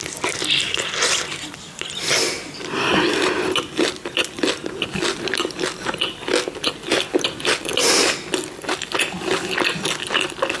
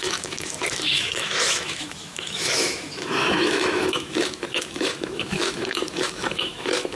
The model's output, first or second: second